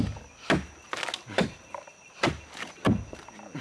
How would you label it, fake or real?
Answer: real